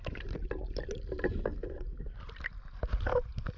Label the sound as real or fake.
real